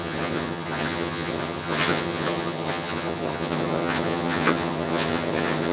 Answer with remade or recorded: remade